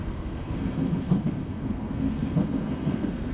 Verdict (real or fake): fake